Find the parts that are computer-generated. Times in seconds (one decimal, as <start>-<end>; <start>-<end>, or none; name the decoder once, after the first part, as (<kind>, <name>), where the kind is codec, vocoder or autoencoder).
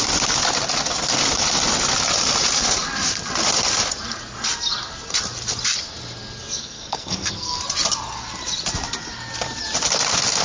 6.6-7.6 (codec, SNAC)